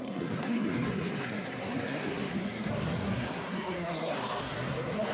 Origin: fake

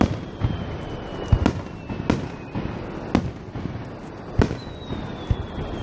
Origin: real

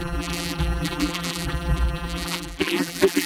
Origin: fake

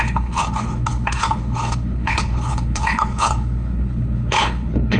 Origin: fake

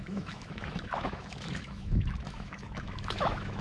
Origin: fake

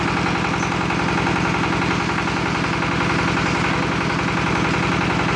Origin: real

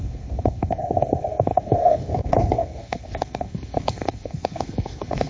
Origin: fake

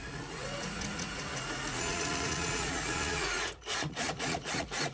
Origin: fake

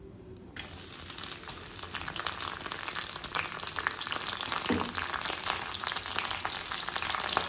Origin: real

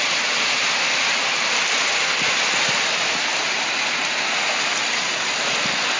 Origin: real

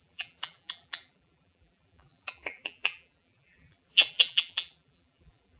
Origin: fake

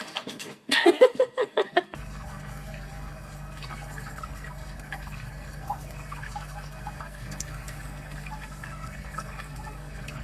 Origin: fake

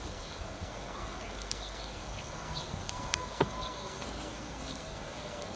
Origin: fake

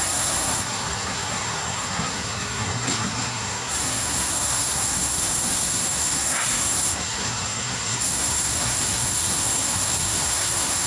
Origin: fake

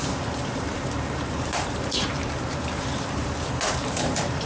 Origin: fake